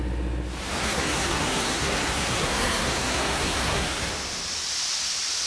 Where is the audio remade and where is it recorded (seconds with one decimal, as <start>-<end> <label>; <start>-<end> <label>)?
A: 0.0-0.8 recorded; 0.8-4.1 remade; 4.1-5.5 recorded